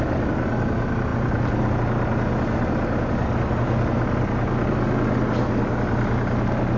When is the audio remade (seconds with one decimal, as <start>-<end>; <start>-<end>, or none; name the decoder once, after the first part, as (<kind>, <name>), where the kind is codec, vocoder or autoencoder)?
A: 1.1-1.7 (vocoder, BigVGAN v2)